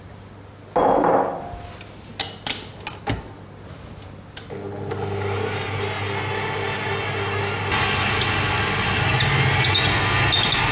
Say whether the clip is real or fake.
real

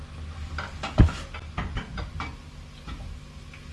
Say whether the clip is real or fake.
real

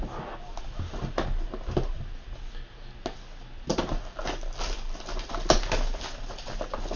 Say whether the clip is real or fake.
real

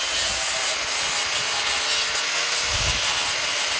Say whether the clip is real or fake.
real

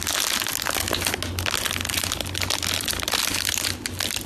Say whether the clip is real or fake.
real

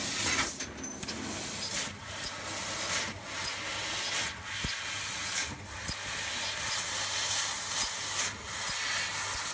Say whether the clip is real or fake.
real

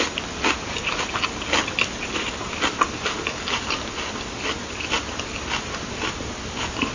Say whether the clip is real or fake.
real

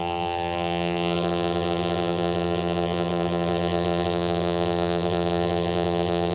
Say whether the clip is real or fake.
fake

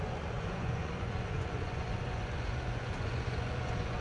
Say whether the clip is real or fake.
fake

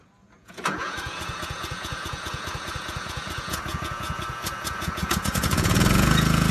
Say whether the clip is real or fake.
fake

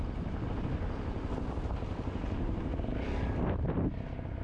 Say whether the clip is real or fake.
real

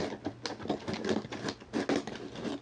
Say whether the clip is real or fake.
real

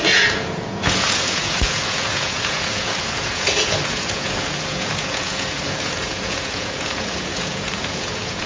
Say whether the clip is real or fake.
fake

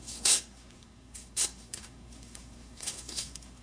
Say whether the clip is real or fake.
fake